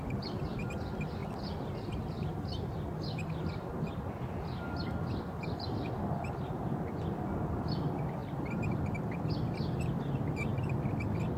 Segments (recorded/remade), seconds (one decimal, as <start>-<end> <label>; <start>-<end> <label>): 0.0-8.2 recorded; 8.2-8.9 remade; 8.9-10.5 recorded; 10.5-11.4 remade